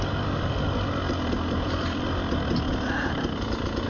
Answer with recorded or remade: recorded